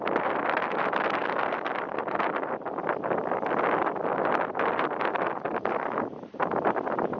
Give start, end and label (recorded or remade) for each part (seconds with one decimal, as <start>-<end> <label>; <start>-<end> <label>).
0.0-7.2 recorded